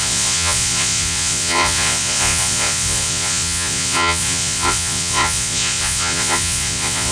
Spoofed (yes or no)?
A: yes